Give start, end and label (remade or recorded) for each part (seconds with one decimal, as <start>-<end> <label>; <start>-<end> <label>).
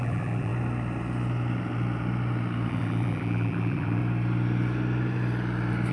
0.0-0.5 remade; 0.5-2.7 recorded; 2.7-4.0 remade; 4.0-5.9 recorded